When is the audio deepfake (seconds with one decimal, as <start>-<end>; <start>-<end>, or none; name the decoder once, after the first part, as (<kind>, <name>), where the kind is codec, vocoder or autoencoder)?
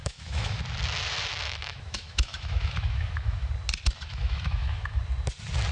0.0-0.6 (autoencoder, DAC-VAE); 1.3-3.5; 4.1-5.0